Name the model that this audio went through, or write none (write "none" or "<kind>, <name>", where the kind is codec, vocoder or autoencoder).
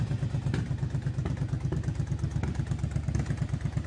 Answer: none